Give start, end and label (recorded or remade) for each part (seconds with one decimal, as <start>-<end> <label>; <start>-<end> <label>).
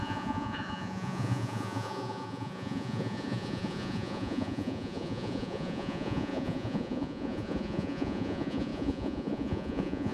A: 0.0-10.1 remade